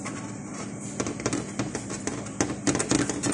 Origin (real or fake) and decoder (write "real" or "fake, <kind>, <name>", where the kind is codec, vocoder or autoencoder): real